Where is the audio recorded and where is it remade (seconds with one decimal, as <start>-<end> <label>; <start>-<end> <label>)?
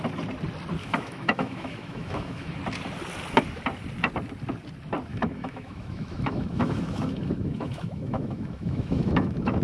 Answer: 0.0-0.8 recorded; 0.8-2.6 remade; 2.6-5.1 recorded; 5.1-9.6 remade